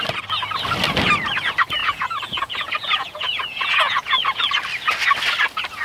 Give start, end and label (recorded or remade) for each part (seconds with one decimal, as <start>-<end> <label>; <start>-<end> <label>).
0.0-1.8 recorded; 1.8-4.4 remade; 4.4-5.8 recorded